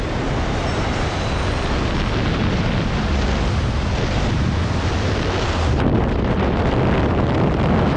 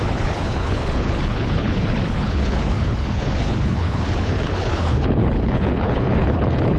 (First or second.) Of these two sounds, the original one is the first